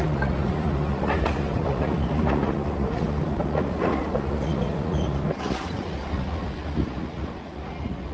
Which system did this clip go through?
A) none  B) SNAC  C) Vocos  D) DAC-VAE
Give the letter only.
C